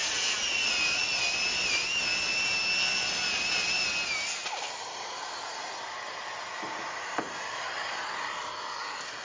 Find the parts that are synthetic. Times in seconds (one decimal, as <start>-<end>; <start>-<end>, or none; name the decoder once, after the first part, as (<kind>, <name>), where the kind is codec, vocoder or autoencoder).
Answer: 0.0-1.2 (vocoder, Vocos)